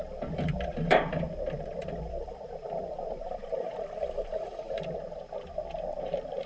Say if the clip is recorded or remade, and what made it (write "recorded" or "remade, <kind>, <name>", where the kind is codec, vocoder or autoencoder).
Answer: remade, vocoder, BigVGAN v2